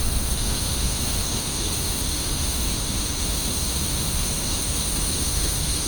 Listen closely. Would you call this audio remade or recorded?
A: remade